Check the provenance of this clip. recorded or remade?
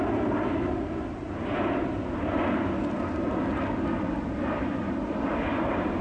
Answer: recorded